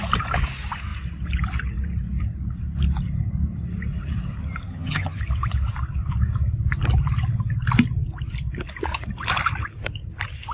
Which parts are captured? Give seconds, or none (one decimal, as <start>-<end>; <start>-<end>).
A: 0.0-4.7; 5.2-10.5